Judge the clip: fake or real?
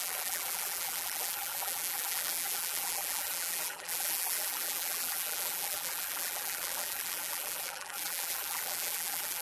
fake